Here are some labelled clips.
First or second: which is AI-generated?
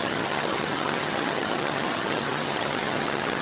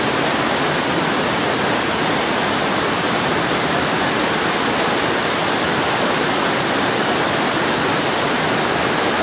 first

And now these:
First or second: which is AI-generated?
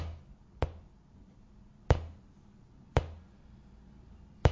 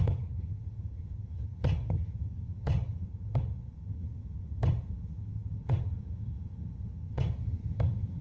second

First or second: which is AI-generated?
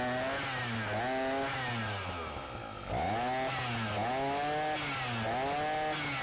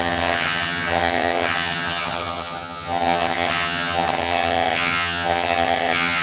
second